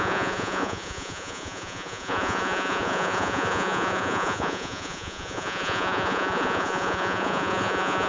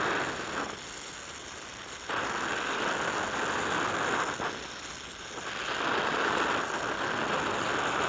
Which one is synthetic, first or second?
first